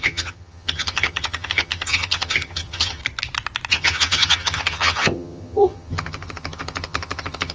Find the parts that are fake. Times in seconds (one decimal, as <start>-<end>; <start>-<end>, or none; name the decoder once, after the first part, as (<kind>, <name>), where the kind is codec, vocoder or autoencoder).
0.0-3.0 (vocoder, HiFi-GAN); 3.7-7.5